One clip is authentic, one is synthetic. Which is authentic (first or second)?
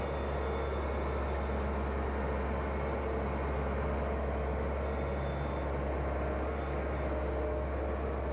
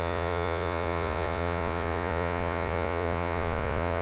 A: first